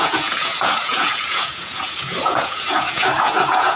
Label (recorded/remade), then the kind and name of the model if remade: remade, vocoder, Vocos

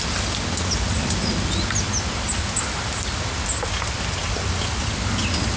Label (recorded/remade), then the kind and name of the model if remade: recorded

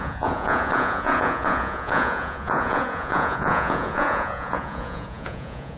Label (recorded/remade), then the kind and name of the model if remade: remade, vocoder, Vocos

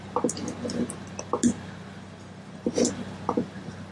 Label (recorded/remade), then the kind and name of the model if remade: recorded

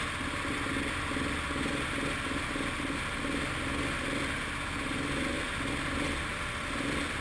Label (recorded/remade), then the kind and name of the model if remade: recorded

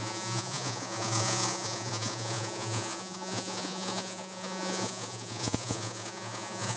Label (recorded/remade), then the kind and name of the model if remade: remade, vocoder, Vocos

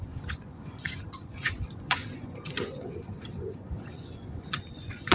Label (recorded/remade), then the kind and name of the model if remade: remade, vocoder, Vocos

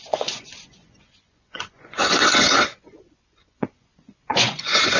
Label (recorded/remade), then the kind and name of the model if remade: remade, vocoder, Vocos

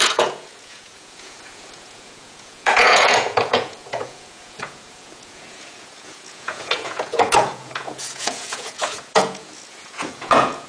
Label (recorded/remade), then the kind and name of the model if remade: remade, vocoder, Vocos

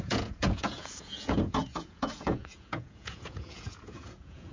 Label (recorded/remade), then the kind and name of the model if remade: remade, vocoder, Vocos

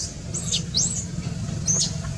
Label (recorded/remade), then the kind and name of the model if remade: recorded